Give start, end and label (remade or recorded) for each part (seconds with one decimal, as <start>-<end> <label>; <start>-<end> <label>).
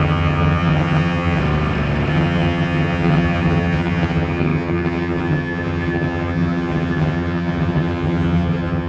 0.0-1.4 remade; 1.4-2.1 recorded; 2.1-8.9 remade